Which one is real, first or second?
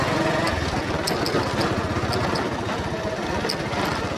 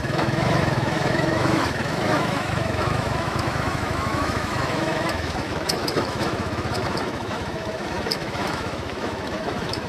first